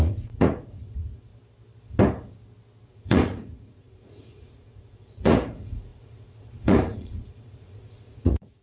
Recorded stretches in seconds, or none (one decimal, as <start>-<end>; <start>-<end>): 1.3-2.9